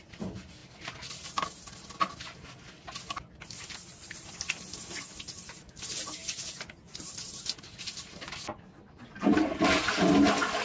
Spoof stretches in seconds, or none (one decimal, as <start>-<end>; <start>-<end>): none